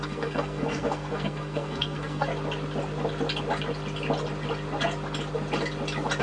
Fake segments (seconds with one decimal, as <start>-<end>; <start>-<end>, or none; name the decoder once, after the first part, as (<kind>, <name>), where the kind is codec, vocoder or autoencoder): 0.0-2.3 (codec, SNAC)

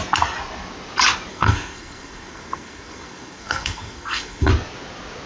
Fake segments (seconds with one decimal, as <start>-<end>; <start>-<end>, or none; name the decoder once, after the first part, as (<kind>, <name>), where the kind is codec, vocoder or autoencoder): 1.3-4.5 (codec, SNAC)